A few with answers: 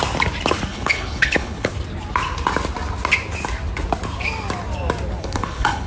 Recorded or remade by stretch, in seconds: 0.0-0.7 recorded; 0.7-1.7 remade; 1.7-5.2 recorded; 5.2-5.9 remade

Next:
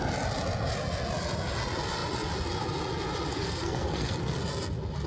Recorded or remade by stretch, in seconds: 0.0-3.3 recorded; 3.3-4.4 remade; 4.4-5.1 recorded